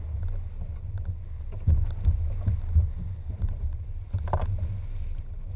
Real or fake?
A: real